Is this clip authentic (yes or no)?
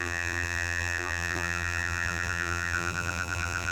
no